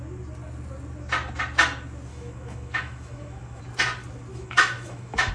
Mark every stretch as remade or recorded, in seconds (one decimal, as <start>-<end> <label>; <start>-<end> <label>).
0.0-2.1 recorded; 2.1-3.6 remade; 3.6-4.3 recorded; 4.3-5.3 remade